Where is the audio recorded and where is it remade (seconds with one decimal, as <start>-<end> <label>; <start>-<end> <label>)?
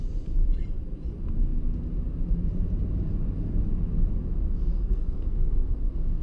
0.0-4.7 recorded; 4.7-6.2 remade